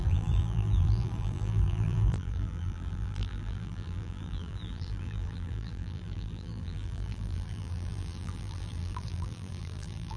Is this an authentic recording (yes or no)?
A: no